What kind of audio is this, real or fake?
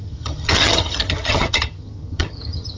fake